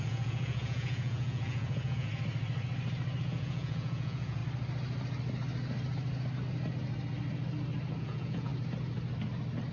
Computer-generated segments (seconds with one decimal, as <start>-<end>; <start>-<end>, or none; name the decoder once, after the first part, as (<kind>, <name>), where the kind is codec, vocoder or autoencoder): 0.0-2.1 (vocoder, Vocos); 3.2-4.4; 8.0-8.5